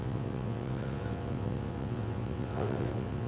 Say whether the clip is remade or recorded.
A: remade